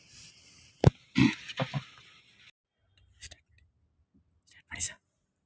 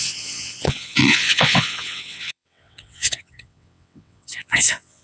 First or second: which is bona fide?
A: first